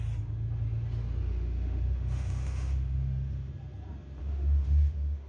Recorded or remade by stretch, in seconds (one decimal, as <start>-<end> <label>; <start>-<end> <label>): 0.0-1.2 recorded; 1.2-3.5 remade; 3.5-4.2 recorded; 4.2-5.3 remade